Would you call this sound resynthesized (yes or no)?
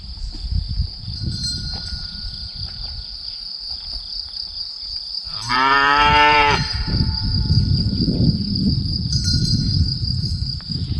yes